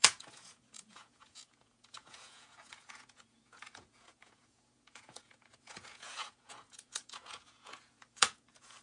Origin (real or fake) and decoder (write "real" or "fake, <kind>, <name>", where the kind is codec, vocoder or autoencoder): fake, vocoder, Vocos